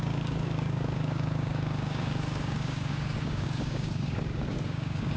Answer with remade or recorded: remade